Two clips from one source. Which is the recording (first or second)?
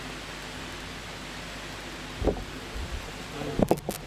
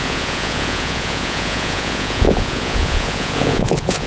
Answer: first